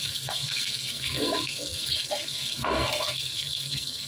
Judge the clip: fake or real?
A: fake